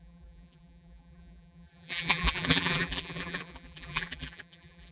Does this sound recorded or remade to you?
remade